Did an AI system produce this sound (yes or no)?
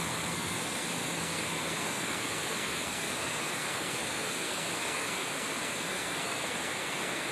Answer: yes